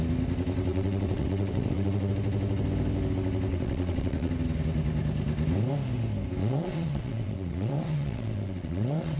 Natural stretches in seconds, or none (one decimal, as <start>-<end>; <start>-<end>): 0.0-0.7; 2.1-3.5; 4.3-6.4